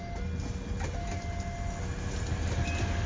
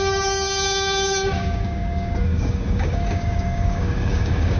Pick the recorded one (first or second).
first